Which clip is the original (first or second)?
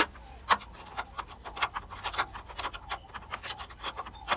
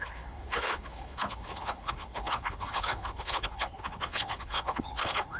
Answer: first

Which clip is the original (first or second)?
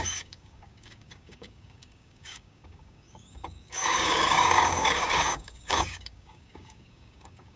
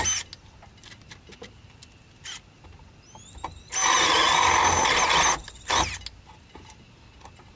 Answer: second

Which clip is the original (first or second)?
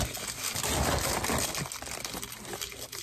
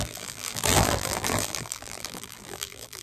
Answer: first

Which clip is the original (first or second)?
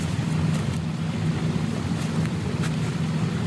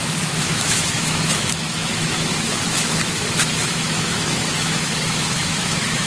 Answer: first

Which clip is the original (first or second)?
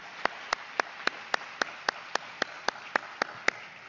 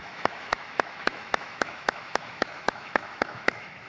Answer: first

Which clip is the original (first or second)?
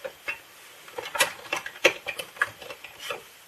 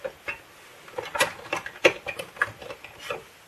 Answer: second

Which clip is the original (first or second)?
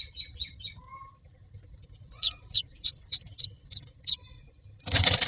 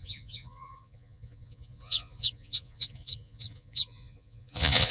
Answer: first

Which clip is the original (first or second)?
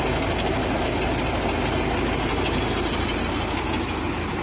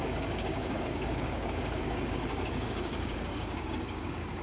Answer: first